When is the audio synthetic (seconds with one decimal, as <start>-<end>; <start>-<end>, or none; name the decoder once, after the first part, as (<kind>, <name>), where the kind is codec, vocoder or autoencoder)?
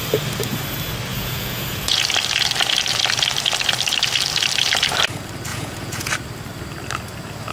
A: 1.1-2.0 (vocoder, Vocos); 5.5-6.1